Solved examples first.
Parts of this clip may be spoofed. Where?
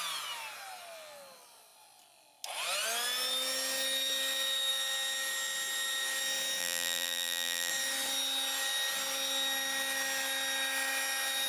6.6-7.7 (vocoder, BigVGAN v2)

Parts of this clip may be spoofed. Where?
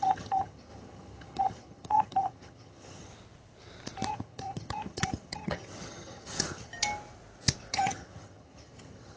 0.0-3.1 (vocoder, HiFi-GAN); 4.1-6.7; 7.7-9.2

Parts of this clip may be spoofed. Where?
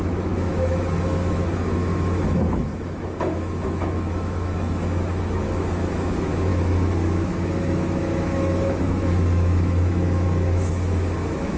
0.0-11.6 (autoencoder, DAC-VAE)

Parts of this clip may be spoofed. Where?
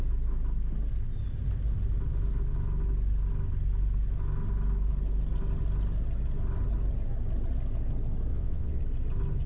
8.3-8.8 (vocoder, WaveNeXt)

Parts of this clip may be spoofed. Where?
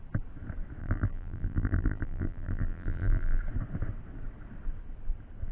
0.8-3.4 (vocoder, BigVGAN v2)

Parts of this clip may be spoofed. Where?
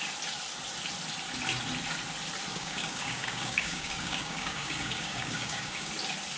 2.5-5.9 (codec, DAC)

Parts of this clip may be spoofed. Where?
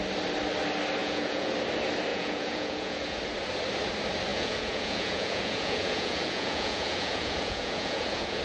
1.0-1.5 (vocoder, Vocos); 2.1-3.2; 4.3-8.4